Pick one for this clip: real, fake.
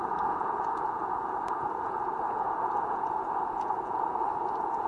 fake